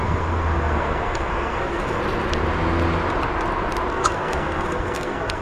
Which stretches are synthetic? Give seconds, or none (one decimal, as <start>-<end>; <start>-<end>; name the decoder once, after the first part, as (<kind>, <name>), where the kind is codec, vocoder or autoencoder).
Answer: 0.0-2.0 (codec, SNAC); 3.9-5.4